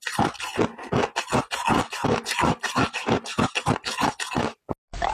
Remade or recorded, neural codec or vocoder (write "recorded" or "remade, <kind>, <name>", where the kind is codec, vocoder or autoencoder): recorded